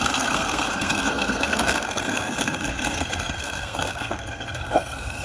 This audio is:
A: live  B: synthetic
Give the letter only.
B